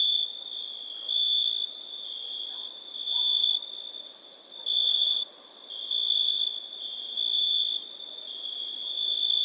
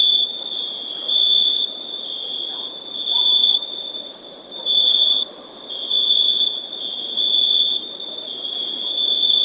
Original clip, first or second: first